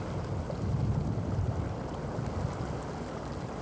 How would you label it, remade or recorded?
recorded